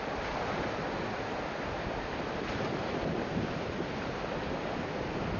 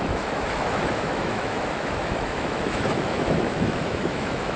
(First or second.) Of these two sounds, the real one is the first